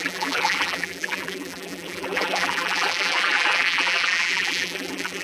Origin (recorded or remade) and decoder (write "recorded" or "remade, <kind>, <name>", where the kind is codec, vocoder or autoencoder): remade, vocoder, BigVGAN v2